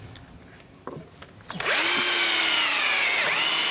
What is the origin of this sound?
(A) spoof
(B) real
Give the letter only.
B